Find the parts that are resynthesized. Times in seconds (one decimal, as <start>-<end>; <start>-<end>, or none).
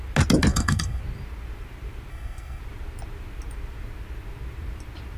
0.5-1.0; 2.1-2.6